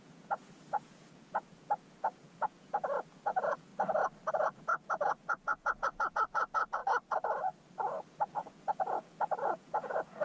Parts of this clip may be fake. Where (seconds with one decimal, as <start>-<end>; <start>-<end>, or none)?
0.0-3.7; 4.3-6.8; 8.1-10.2